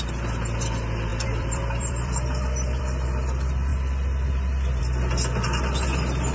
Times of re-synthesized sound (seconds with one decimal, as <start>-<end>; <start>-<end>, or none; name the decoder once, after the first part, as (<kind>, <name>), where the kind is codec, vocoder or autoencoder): 1.1-2.8 (vocoder, BigVGAN v2)